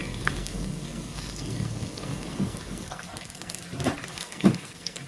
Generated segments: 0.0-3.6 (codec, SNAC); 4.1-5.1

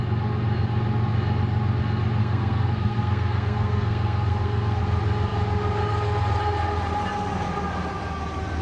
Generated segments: 2.2-4.8 (codec, SNAC)

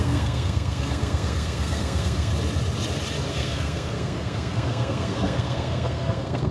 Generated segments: 0.0-2.3 (codec, SNAC); 3.3-6.5

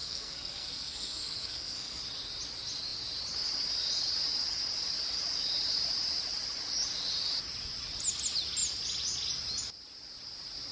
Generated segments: 0.0-2.0 (codec, SNAC)